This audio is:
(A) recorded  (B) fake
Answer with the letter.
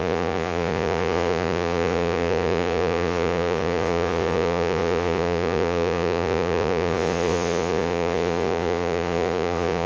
B